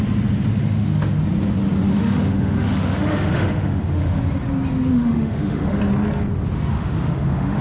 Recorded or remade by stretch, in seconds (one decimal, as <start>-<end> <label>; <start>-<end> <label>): 0.0-0.5 recorded; 0.5-1.2 remade; 1.2-1.9 recorded; 1.9-4.2 remade; 4.2-4.9 recorded; 4.9-5.8 remade; 5.8-6.7 recorded; 6.7-7.6 remade